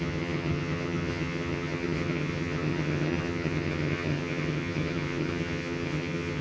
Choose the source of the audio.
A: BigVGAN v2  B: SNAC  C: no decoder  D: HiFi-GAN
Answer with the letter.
D